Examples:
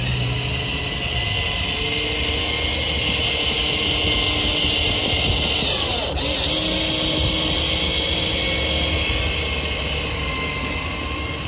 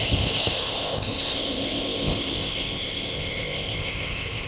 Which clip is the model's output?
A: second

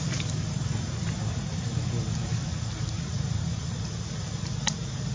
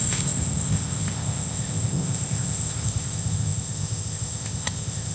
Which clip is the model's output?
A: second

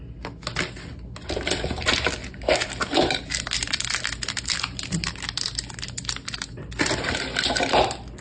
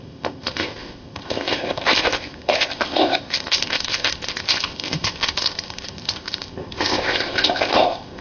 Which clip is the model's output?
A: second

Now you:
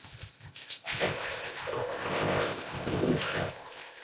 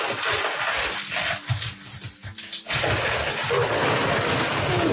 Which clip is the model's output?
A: first